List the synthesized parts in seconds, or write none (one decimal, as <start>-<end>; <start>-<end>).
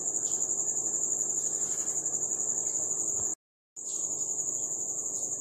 2.8-3.3; 4.5-5.4